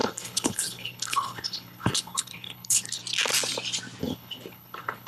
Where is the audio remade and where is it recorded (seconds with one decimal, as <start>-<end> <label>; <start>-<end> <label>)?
0.0-3.0 remade; 3.0-4.0 recorded; 4.0-5.1 remade